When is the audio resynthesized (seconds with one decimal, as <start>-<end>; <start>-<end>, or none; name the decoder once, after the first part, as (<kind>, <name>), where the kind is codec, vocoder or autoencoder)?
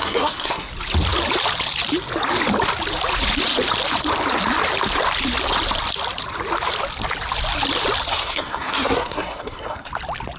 0.0-0.7 (codec, SNAC); 8.1-9.9